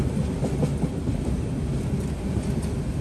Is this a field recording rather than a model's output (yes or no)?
yes